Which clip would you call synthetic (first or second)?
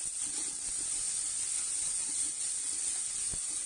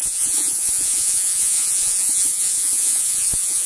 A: second